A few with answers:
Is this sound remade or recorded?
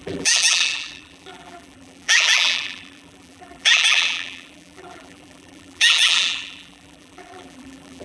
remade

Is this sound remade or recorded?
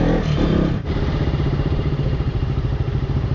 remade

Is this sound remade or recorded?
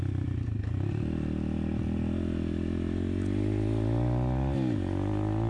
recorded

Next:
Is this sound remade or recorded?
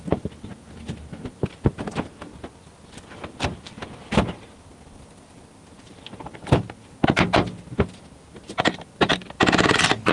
recorded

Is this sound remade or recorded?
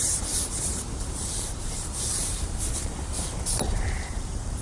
remade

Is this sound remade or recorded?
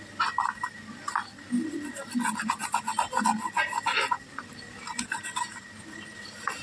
recorded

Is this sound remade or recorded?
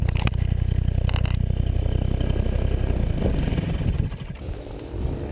recorded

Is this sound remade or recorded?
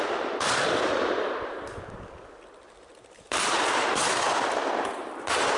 remade